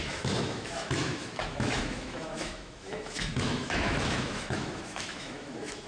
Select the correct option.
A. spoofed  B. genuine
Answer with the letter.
A